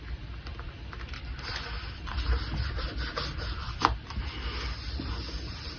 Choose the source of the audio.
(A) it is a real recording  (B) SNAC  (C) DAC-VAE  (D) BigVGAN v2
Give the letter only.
A